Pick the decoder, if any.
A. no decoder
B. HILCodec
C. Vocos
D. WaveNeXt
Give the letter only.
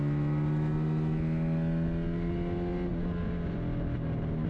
A